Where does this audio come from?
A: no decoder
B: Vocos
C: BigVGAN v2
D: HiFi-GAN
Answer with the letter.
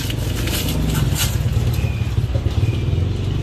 A